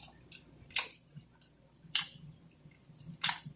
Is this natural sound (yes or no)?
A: no